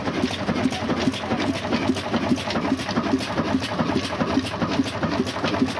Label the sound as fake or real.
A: real